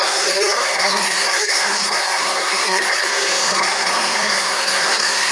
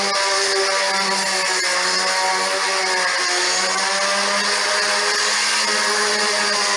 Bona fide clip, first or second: second